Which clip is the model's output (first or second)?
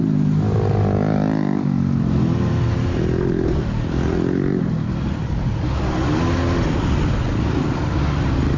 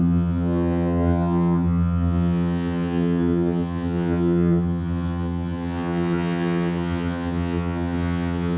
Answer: second